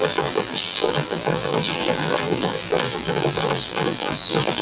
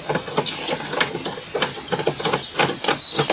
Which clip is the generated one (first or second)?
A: first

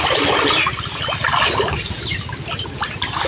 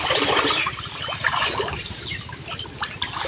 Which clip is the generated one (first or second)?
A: second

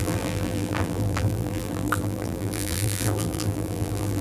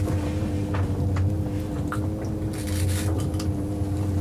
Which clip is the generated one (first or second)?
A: first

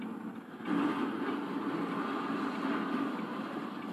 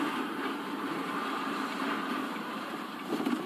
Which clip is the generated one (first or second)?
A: second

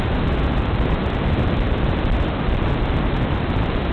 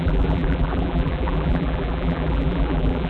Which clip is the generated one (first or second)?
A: second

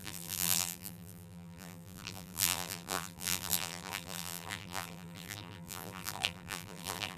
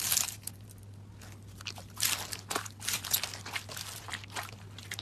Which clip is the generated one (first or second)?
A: first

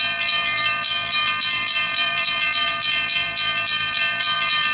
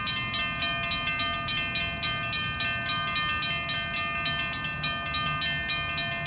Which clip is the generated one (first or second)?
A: first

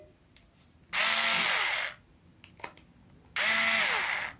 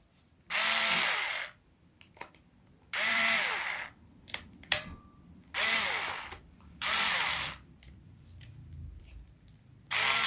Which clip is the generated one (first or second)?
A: second